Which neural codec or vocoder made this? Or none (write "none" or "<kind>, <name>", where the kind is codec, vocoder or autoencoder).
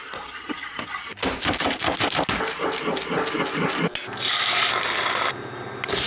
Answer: none